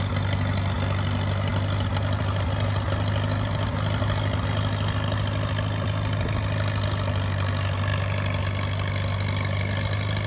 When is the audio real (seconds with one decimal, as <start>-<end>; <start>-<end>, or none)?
0.0-10.3